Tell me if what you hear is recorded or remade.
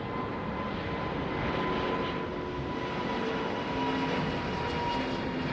recorded